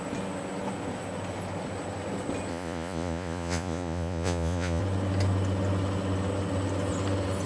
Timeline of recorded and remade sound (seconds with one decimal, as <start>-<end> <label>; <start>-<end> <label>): 0.0-2.5 recorded; 2.5-4.8 remade; 4.8-7.5 recorded